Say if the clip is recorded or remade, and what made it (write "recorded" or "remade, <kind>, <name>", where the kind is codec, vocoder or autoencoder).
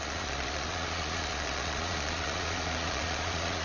remade, vocoder, Vocos